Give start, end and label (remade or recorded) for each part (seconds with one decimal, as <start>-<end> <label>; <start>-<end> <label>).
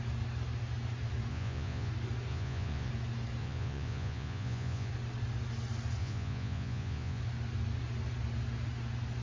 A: 0.0-1.3 recorded; 1.3-1.9 remade; 1.9-2.3 recorded; 2.3-2.9 remade; 2.9-3.4 recorded; 3.4-4.9 remade; 4.9-6.0 recorded; 6.0-7.2 remade; 7.2-9.2 recorded